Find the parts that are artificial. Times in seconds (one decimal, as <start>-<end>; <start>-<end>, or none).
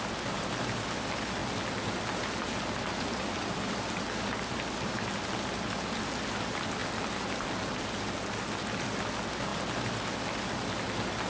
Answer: none